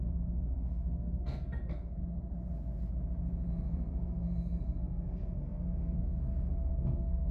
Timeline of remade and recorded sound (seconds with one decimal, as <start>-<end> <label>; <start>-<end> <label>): 0.0-2.0 remade; 2.0-3.5 recorded; 3.5-7.3 remade